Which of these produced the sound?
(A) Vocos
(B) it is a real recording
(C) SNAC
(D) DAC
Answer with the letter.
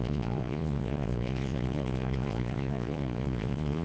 A